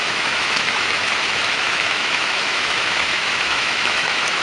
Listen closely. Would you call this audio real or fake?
fake